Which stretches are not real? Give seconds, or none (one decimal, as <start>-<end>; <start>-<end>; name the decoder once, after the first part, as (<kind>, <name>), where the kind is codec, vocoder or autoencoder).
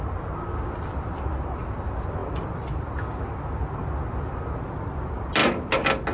none